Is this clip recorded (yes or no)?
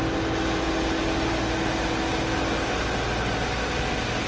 yes